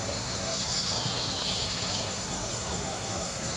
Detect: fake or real fake